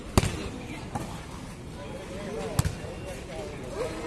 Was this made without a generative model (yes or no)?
yes